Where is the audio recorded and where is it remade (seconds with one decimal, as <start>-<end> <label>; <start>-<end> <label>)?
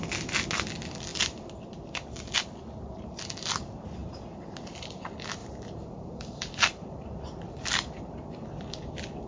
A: 0.0-4.0 recorded; 4.0-5.0 remade; 5.0-5.4 recorded; 5.4-6.5 remade; 6.5-9.3 recorded